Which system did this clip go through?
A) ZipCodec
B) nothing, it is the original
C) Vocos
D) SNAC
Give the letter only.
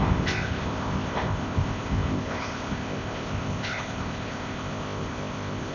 A